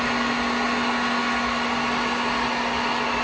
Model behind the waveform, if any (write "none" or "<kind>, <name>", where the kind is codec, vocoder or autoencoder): none